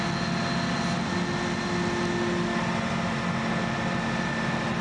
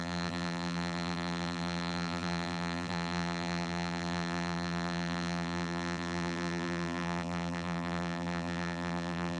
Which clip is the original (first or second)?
first